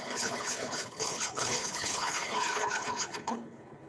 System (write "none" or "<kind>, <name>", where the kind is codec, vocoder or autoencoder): codec, HILCodec